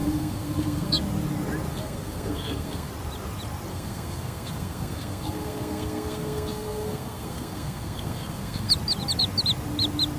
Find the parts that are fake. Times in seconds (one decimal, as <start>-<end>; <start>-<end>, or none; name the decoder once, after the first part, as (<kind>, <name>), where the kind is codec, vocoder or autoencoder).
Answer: 0.0-1.0 (codec, SNAC); 1.7-2.9; 3.7-8.7